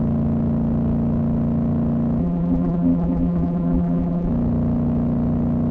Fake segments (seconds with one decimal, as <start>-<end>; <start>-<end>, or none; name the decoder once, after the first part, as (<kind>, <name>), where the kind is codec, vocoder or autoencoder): 2.2-4.3 (vocoder, BigVGAN v2)